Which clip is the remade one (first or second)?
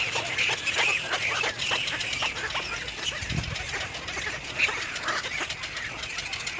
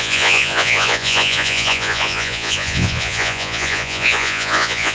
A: second